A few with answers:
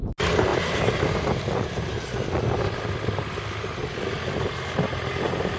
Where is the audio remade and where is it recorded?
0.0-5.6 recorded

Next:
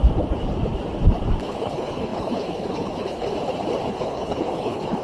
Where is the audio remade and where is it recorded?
0.0-1.4 recorded; 1.4-3.3 remade; 3.3-3.9 recorded; 3.9-5.0 remade

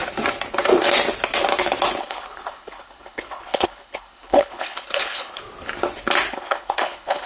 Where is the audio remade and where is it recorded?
0.0-2.0 recorded; 2.0-5.4 remade; 5.4-6.3 recorded; 6.3-7.3 remade

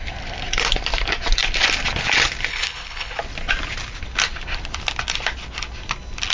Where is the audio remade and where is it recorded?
0.0-2.5 recorded; 2.5-3.2 remade; 3.2-6.3 recorded